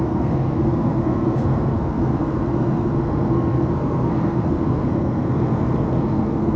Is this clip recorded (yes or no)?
no